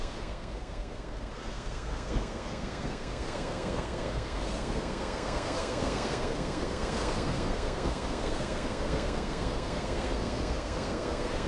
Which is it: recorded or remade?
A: remade